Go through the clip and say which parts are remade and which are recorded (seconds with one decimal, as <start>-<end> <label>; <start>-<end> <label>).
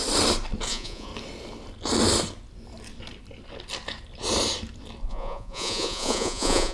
0.0-0.7 recorded; 0.7-1.1 remade; 1.1-5.1 recorded; 5.1-6.7 remade